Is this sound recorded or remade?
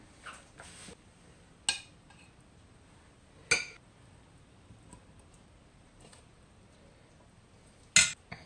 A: recorded